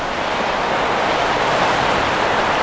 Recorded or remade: remade